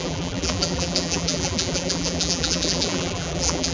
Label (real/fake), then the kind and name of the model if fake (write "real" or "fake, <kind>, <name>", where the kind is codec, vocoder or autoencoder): fake, vocoder, BigVGAN v2